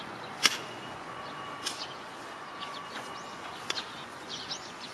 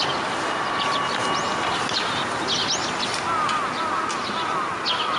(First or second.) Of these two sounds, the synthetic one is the first